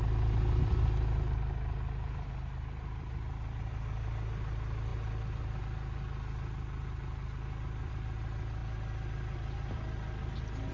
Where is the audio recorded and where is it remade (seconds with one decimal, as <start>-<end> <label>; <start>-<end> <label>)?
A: 0.0-10.7 remade